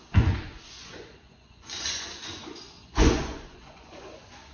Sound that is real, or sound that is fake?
fake